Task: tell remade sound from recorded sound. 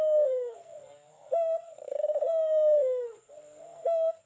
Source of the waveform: remade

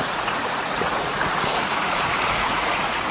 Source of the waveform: remade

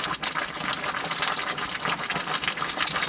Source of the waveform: recorded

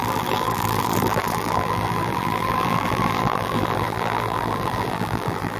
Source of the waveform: remade